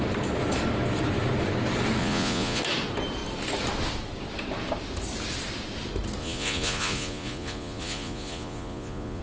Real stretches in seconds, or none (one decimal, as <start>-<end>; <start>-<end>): 0.0-2.0; 2.6-6.2